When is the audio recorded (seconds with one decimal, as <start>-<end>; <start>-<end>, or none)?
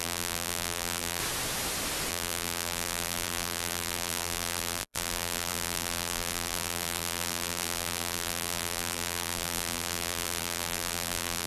1.2-2.1